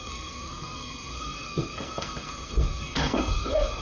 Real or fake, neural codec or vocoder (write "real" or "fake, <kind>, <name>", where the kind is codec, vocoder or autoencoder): fake, codec, SNAC